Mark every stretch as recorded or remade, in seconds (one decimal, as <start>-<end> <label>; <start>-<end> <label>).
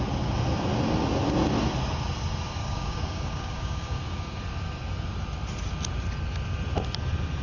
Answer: 0.0-2.6 recorded; 2.6-4.4 remade; 4.4-7.4 recorded